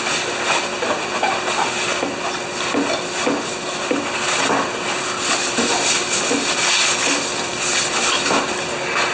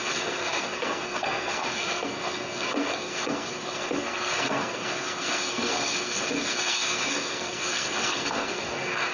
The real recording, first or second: first